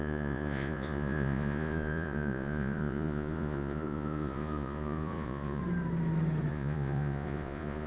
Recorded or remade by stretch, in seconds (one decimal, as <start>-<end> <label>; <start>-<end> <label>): 0.0-5.6 remade; 5.6-6.5 recorded; 6.5-7.9 remade